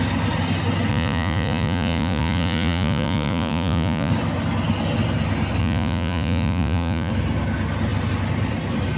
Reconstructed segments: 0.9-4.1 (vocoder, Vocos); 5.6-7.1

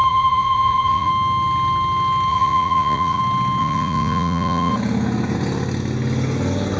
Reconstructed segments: 0.0-1.1 (vocoder, Vocos); 2.3-3.2; 3.6-4.7

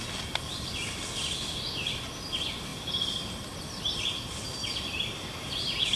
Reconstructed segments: none

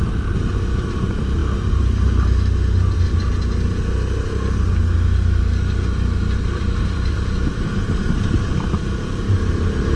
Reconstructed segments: 0.0-1.4 (vocoder, BigVGAN v2); 6.2-10.0

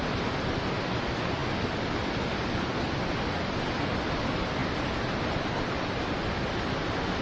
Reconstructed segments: none